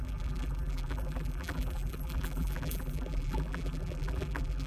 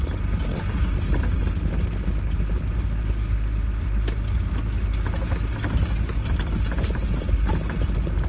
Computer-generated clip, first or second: first